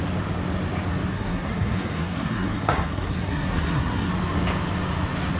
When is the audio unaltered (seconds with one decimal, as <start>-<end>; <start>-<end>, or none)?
0.0-1.1; 4.1-5.4